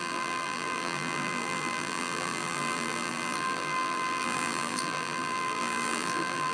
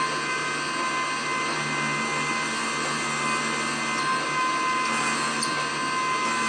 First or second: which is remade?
first